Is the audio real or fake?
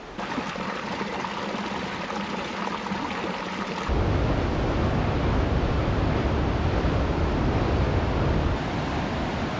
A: real